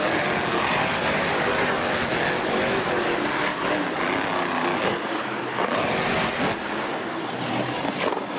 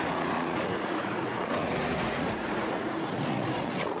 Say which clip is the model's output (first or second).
second